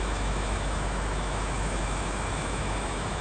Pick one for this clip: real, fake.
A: fake